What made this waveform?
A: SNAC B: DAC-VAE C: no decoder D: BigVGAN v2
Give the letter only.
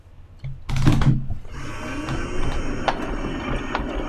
C